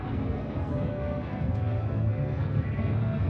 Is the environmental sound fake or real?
fake